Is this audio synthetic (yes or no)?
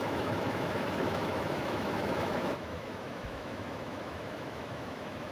yes